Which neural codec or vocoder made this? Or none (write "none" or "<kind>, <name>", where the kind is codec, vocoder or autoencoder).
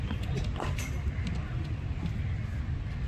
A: none